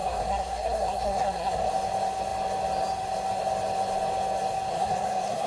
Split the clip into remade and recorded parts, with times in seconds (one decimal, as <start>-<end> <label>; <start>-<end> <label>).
0.0-1.7 remade; 1.7-4.7 recorded; 4.7-5.5 remade